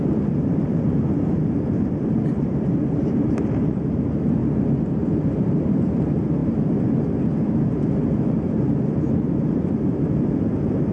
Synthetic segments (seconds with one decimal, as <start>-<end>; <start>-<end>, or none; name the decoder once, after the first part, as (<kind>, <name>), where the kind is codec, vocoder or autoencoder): 0.0-4.4 (vocoder, BigVGAN v2); 5.1-10.9